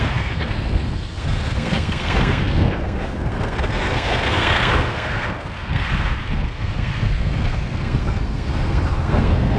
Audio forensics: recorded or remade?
remade